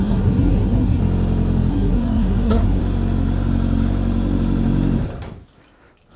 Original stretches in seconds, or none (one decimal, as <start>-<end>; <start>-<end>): 1.0-1.7; 2.8-6.2